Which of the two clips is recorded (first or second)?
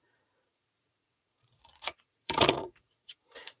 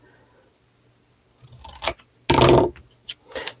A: second